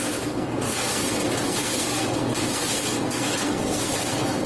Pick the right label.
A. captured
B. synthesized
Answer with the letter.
B